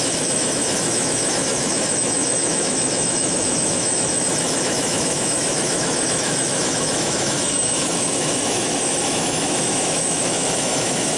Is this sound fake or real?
fake